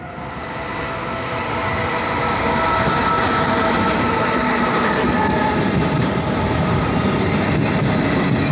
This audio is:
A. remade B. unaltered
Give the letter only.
B